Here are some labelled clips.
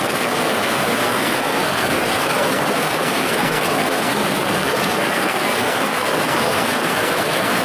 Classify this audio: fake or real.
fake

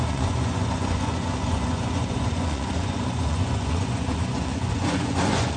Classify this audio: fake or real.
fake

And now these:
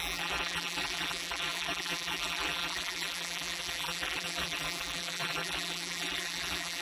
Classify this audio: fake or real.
fake